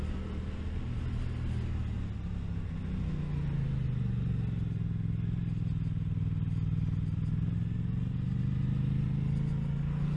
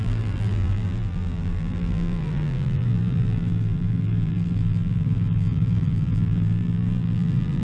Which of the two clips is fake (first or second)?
second